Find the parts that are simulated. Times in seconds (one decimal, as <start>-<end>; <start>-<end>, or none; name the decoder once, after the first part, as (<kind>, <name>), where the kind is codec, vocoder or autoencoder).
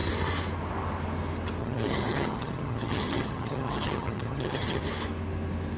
1.6-4.8 (vocoder, HiFi-GAN)